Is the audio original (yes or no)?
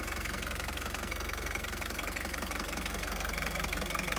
no